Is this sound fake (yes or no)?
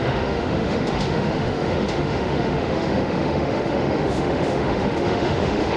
yes